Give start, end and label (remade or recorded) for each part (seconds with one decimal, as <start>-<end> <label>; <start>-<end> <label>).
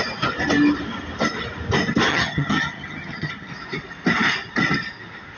0.0-2.1 recorded; 2.1-3.5 remade; 3.5-5.4 recorded